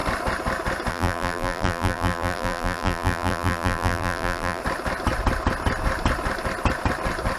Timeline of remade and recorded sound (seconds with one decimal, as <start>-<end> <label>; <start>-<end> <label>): 0.0-0.9 recorded; 0.9-4.6 remade; 4.6-7.4 recorded